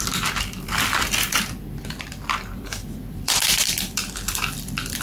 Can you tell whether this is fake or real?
fake